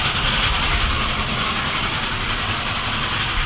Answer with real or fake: real